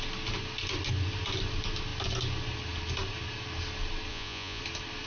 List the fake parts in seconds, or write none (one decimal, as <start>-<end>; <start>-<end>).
4.1-4.6